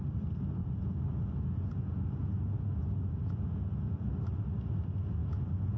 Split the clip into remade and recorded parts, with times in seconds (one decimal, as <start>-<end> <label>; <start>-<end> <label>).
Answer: 0.0-0.6 recorded; 0.6-4.1 remade; 4.1-5.2 recorded; 5.2-5.8 remade